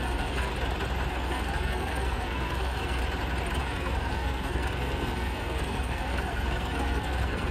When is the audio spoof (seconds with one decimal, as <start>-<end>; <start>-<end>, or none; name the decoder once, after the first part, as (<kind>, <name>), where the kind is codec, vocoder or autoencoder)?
0.0-0.5 (codec, SNAC); 1.1-3.0; 3.6-7.5